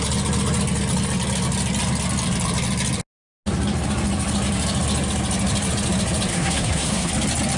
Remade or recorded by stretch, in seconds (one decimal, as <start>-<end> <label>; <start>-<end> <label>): 0.0-6.3 recorded; 6.3-7.1 remade; 7.1-7.6 recorded

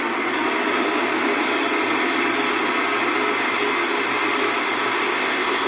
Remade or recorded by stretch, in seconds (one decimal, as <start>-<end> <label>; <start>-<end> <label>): 0.0-5.1 recorded; 5.1-5.7 remade

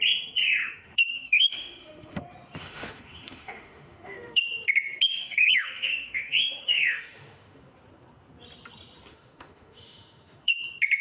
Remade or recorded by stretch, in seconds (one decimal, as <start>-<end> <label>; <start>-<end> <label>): 0.0-0.6 recorded; 0.6-2.2 remade; 2.2-2.6 recorded; 2.6-4.4 remade; 4.4-5.2 recorded; 5.2-7.6 remade; 7.6-9.1 recorded; 9.1-10.6 remade; 10.6-11.0 recorded